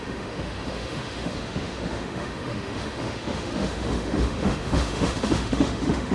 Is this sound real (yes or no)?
no